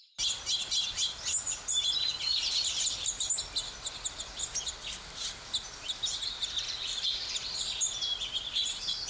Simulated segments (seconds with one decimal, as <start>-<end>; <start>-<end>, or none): none